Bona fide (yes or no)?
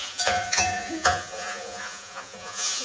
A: no